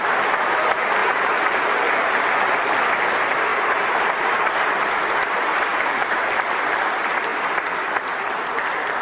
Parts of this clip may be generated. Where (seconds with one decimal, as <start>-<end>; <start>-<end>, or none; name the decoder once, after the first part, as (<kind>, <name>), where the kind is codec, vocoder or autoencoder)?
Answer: 1.0-2.2 (vocoder, BigVGAN v2); 3.5-4.5; 5.7-6.3